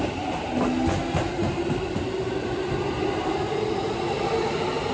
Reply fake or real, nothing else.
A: real